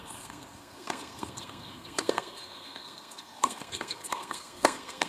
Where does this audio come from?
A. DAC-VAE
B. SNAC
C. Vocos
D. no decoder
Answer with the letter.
B